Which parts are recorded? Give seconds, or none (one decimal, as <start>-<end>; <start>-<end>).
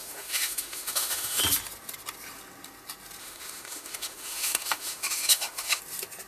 1.4-3.2; 5.8-6.3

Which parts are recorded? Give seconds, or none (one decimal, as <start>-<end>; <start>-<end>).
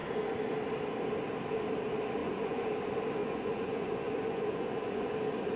0.0-2.2; 2.7-3.2; 5.1-5.6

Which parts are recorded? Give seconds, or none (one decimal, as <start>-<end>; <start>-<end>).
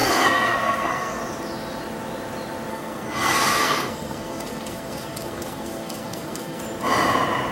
1.2-2.7; 6.6-7.5